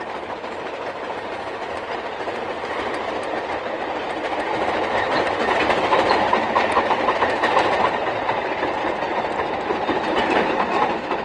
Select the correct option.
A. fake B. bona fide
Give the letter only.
A